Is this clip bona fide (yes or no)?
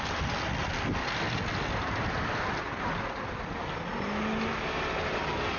yes